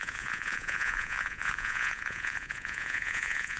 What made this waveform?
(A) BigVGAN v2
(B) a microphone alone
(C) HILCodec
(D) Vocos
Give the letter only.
D